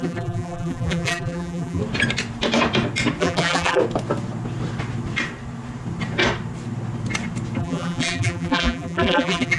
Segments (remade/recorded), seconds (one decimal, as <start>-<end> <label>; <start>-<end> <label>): 0.0-1.8 remade; 1.8-3.2 recorded; 3.2-3.8 remade; 3.8-7.6 recorded; 7.6-9.6 remade